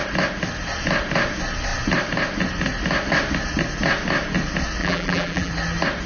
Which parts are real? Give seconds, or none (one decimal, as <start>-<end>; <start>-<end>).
0.0-4.8; 5.5-6.1